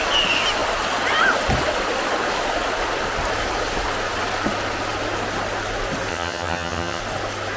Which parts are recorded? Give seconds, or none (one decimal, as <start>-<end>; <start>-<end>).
0.0-6.1; 7.0-7.6